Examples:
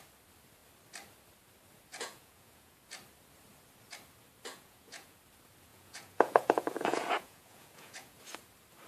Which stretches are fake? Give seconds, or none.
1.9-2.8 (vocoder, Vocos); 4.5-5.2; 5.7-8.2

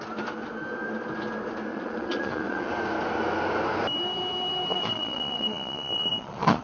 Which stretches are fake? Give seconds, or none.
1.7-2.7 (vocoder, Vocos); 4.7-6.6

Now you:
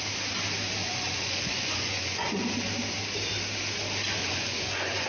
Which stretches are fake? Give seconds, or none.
0.8-2.3 (vocoder, Vocos); 4.2-5.1